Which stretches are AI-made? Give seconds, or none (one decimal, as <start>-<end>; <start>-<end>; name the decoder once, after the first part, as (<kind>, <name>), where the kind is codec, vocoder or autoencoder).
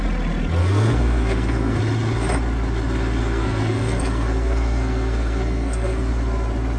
0.6-1.8 (codec, SNAC); 3.2-6.1